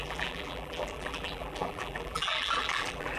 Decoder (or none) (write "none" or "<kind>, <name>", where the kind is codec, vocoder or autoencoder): vocoder, BigVGAN v2